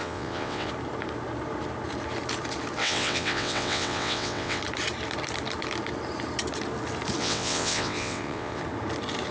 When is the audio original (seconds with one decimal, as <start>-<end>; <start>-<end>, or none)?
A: 0.7-2.8; 4.6-7.2; 8.6-9.3